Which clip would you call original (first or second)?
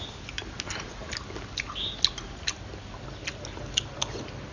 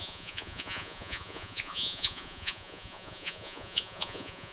first